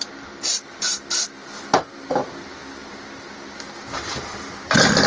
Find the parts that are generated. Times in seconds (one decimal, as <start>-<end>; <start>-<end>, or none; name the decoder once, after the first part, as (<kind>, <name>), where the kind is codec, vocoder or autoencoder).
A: none